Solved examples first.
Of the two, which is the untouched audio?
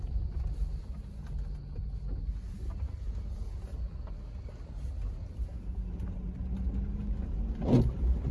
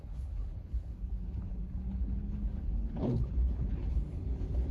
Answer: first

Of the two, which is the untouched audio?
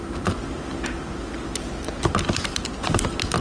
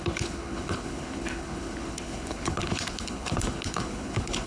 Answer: first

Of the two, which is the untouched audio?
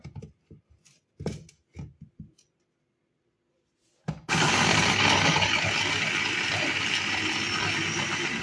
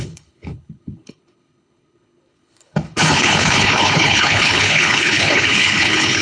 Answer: first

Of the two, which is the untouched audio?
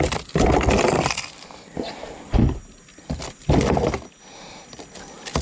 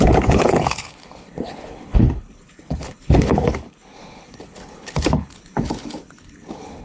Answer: first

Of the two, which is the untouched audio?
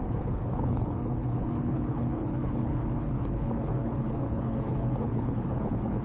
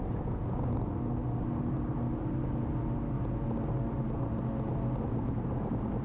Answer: second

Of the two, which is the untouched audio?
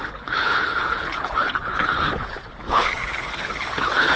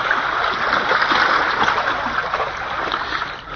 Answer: second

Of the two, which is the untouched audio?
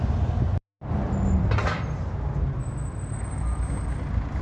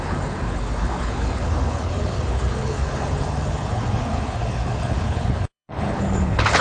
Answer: first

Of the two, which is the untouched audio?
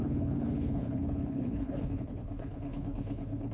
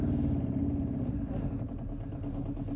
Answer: second